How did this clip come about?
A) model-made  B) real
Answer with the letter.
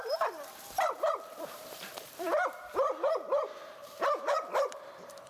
A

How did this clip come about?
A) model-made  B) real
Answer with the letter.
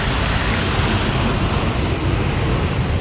B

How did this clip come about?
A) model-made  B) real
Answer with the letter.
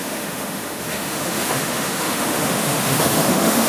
A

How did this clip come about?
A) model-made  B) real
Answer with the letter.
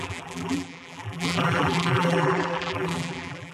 A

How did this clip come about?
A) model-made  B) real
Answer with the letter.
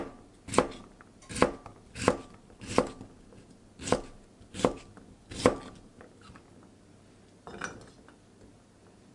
B